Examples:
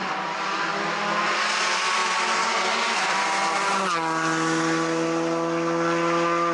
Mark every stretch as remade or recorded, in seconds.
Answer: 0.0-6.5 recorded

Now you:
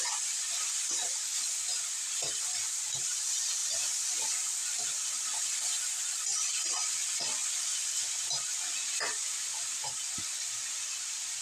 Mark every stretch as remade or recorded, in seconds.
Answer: 0.0-11.4 recorded

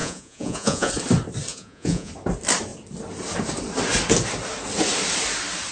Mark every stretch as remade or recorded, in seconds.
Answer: 0.0-0.9 remade; 0.9-1.5 recorded; 1.5-2.1 remade; 2.1-5.7 recorded

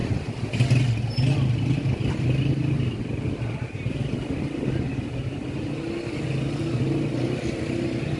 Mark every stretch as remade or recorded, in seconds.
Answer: 0.0-8.2 recorded

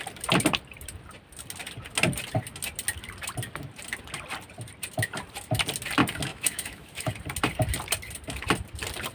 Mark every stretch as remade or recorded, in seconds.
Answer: 0.0-6.3 recorded; 6.3-7.1 remade; 7.1-9.1 recorded

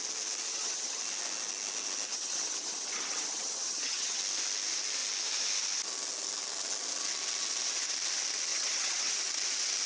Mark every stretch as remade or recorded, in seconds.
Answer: 0.0-0.5 recorded; 0.5-1.0 remade; 1.0-2.1 recorded; 2.1-4.2 remade; 4.2-8.5 recorded; 8.5-9.1 remade; 9.1-9.9 recorded